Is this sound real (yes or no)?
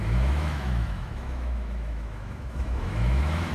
no